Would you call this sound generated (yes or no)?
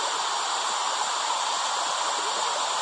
no